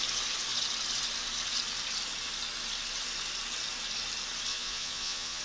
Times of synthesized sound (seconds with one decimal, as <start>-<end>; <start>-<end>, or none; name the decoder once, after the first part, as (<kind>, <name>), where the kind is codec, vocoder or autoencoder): 4.5-5.4 (vocoder, Vocos)